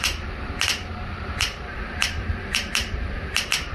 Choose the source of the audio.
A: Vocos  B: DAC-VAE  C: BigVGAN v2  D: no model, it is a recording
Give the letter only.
C